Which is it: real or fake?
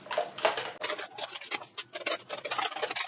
real